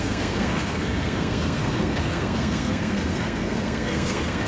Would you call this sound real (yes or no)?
no